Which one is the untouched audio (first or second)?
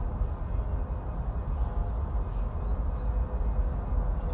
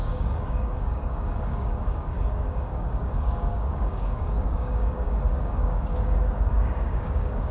first